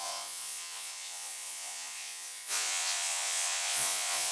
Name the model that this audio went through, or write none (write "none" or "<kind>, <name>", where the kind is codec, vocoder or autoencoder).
vocoder, Vocos